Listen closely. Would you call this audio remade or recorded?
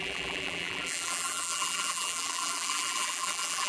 remade